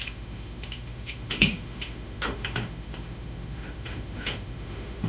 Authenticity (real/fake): fake